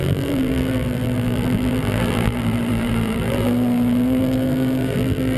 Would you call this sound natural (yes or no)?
no